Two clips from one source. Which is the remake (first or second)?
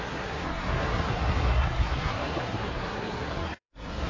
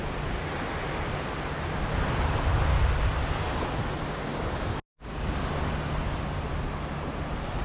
first